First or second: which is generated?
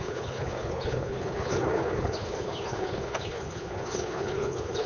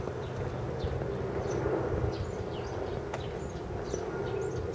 first